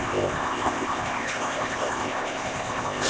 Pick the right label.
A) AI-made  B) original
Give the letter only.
A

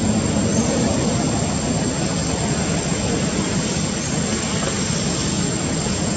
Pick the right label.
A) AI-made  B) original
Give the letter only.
B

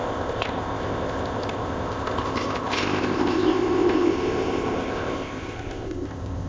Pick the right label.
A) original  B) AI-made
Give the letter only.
B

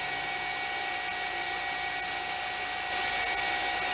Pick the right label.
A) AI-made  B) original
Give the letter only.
B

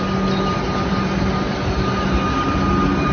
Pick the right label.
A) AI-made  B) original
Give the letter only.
B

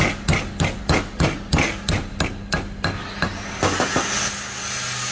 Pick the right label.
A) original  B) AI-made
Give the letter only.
A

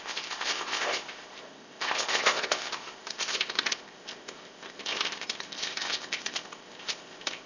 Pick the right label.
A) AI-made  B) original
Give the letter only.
A